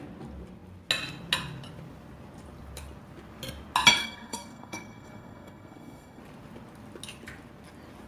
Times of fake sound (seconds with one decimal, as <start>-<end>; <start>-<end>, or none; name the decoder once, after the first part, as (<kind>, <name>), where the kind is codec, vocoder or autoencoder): 4.0-6.2 (codec, SNAC)